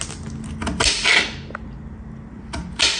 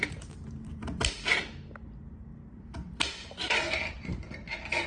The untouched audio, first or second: first